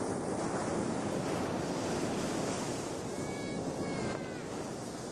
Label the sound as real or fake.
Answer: real